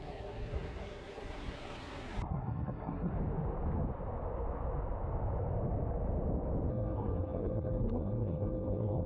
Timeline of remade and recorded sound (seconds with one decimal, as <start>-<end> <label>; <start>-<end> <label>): 0.0-3.1 remade; 3.1-6.7 recorded; 6.7-9.1 remade